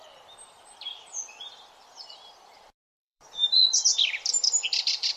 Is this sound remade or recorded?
remade